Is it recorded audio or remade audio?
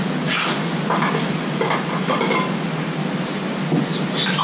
recorded